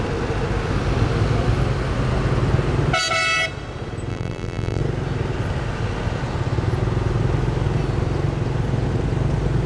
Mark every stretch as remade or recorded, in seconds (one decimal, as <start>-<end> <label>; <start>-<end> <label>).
0.0-4.1 recorded; 4.1-4.8 remade; 4.8-9.7 recorded